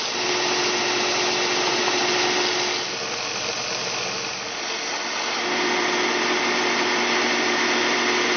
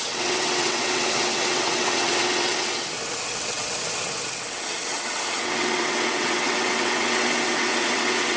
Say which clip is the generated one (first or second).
second